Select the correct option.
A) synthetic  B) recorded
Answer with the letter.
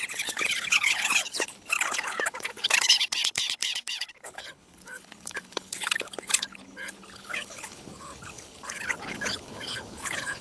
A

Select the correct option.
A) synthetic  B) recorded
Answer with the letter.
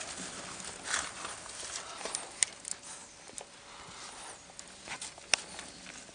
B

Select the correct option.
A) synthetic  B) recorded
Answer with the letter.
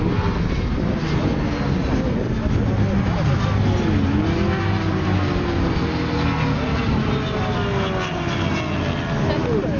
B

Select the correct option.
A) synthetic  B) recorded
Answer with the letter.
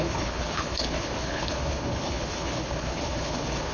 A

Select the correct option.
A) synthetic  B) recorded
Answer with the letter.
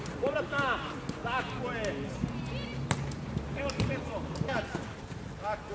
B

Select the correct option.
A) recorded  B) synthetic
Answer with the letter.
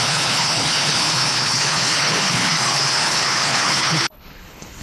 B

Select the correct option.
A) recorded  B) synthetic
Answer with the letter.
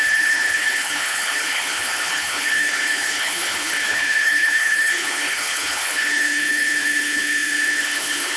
B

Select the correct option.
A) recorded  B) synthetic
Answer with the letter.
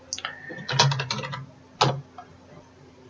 A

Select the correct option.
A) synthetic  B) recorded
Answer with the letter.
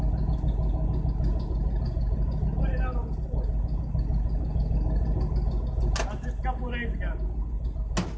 B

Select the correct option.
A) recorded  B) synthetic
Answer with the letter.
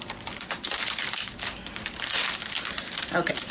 A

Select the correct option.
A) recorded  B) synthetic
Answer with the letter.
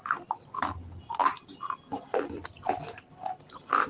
A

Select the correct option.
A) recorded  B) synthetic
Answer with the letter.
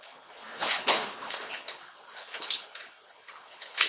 B